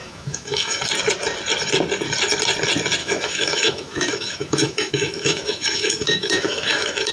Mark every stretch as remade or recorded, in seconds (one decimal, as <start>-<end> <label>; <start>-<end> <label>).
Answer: 0.0-0.8 remade; 0.8-3.0 recorded; 3.0-7.1 remade